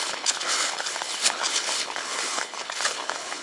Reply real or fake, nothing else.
fake